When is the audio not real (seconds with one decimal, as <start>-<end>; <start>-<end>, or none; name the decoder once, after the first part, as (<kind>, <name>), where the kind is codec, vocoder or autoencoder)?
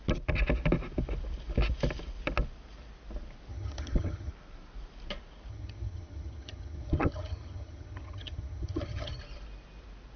3.5-4.3 (vocoder, HiFi-GAN); 5.5-9.2